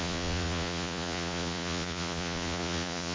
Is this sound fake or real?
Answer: fake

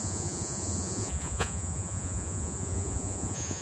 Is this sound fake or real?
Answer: fake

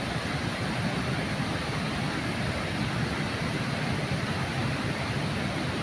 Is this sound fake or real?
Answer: real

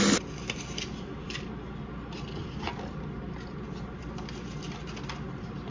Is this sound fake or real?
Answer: real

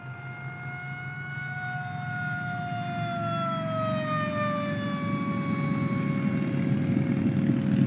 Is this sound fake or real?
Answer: real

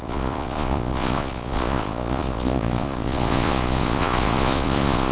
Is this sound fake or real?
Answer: fake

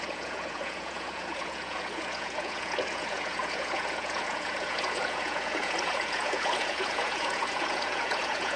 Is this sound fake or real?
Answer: fake